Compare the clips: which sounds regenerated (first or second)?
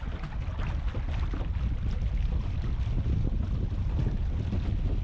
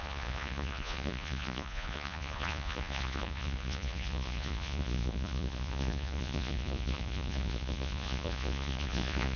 second